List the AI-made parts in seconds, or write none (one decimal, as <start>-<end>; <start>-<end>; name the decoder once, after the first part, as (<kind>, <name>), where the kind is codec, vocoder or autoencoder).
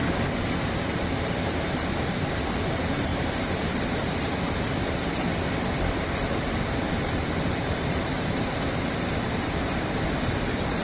1.3-10.8 (vocoder, BigVGAN v2)